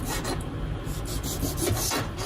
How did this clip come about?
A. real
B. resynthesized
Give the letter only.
A